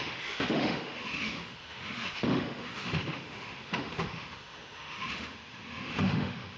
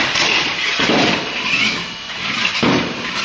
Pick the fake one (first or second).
first